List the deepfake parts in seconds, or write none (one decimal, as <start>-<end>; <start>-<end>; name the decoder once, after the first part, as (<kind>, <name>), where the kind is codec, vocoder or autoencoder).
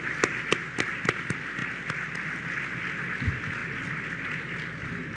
none